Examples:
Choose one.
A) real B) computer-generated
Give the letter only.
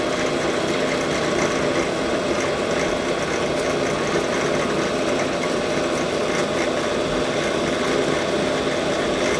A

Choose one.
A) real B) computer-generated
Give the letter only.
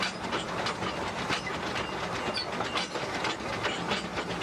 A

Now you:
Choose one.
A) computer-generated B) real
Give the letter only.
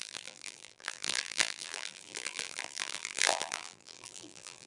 A